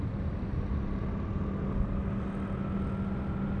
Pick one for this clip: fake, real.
real